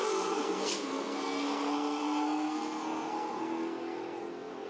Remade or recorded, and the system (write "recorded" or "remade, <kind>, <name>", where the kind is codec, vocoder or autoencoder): remade, codec, SNAC